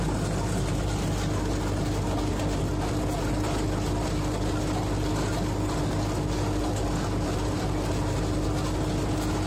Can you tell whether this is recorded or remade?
recorded